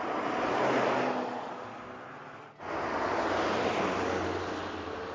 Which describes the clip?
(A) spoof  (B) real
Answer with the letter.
B